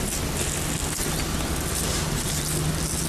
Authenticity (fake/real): real